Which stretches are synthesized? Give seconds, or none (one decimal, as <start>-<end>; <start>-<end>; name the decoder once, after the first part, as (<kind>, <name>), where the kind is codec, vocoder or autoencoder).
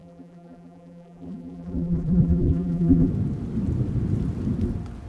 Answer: 0.0-3.1 (vocoder, BigVGAN v2)